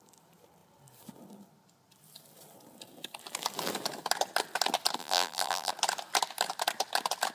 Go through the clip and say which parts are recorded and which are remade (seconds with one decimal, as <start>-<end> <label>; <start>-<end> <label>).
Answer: 0.0-5.0 recorded; 5.0-5.7 remade; 5.7-7.3 recorded